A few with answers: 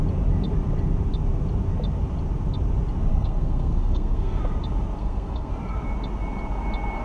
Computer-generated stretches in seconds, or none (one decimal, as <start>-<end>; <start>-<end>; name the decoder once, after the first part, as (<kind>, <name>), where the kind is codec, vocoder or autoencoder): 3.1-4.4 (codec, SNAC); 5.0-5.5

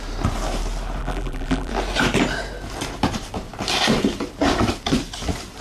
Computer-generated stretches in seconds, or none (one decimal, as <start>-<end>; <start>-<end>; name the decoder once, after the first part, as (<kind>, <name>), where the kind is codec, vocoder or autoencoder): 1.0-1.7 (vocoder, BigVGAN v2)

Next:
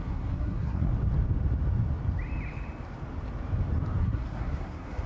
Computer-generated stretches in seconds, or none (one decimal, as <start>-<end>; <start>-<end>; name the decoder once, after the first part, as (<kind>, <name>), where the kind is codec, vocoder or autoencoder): 0.0-0.9 (codec, SNAC); 4.0-5.1

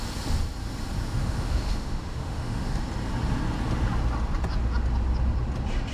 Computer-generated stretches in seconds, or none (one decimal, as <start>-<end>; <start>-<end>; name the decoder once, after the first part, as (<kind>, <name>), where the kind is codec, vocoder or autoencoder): 1.2-2.8 (autoencoder, DAC-VAE)

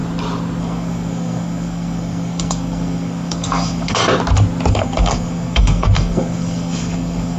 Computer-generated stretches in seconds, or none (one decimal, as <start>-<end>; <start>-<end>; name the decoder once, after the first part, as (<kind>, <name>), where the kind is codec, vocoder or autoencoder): 0.6-4.0 (codec, SNAC); 4.7-7.4

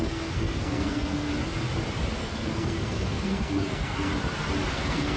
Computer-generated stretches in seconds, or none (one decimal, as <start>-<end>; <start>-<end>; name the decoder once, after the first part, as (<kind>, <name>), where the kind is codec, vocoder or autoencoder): 0.0-1.3 (codec, SNAC); 2.2-4.1; 4.7-5.2

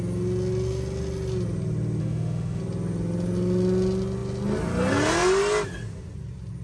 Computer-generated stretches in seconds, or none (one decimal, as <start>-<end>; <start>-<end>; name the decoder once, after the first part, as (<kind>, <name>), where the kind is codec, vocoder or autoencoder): 2.0-2.6 (autoencoder, DAC-VAE)